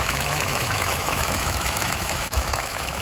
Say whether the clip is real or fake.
fake